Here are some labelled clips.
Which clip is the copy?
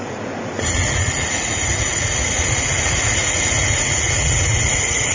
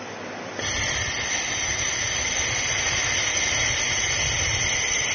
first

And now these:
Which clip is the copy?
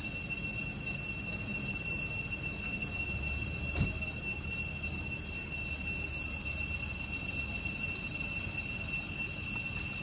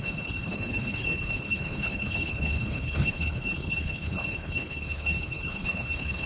second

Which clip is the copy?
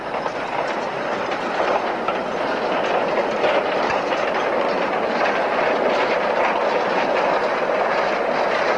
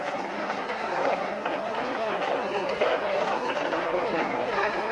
second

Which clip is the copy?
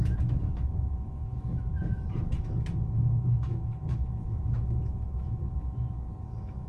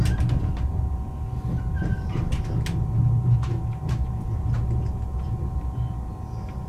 first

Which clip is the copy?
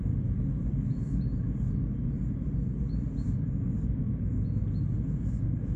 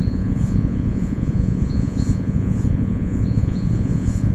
second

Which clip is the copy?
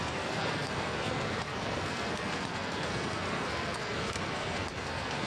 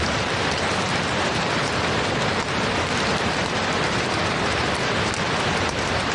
first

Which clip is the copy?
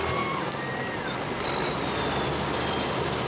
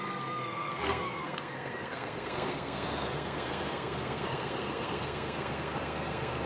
second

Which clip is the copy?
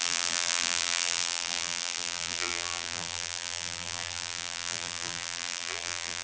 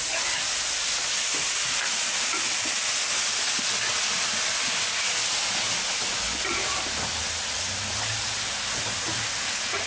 first